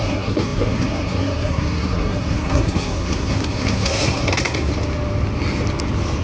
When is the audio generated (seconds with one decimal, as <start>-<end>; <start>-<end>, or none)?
0.0-4.7